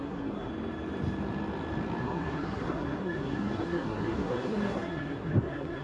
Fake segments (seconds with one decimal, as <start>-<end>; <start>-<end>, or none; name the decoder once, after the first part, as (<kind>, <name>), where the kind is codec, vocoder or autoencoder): 0.0-0.5 (codec, SNAC); 2.0-5.8